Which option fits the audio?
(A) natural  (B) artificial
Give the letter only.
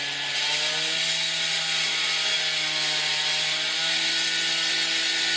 A